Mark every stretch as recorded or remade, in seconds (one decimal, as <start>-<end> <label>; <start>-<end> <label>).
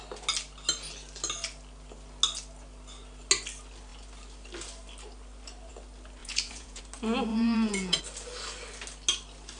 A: 0.0-6.2 recorded; 6.2-6.8 remade; 6.8-7.3 recorded; 7.3-8.0 remade; 8.0-9.6 recorded